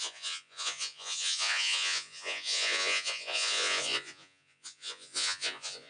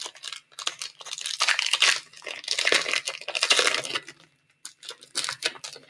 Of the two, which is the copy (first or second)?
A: first